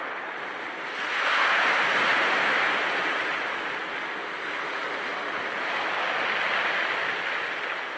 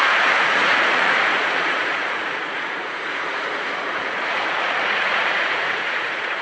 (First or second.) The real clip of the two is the first